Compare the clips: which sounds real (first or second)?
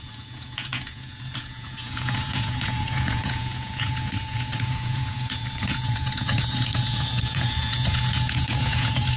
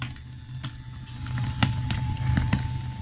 second